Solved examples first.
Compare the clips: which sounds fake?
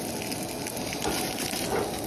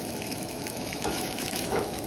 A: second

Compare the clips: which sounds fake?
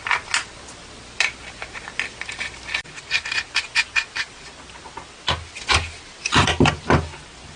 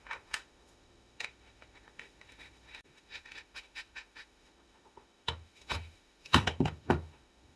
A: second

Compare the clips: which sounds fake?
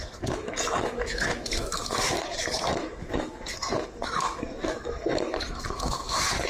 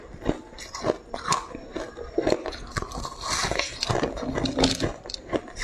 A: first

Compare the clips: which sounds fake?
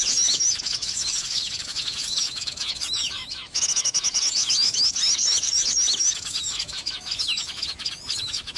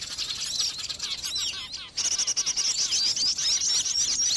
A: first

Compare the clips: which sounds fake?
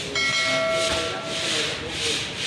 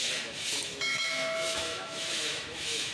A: second